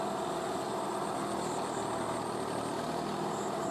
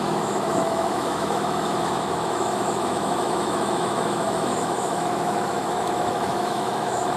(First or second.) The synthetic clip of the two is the second